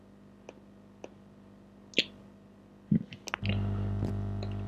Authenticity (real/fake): real